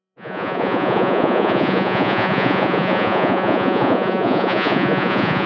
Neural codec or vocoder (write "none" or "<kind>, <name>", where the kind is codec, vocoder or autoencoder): vocoder, Vocos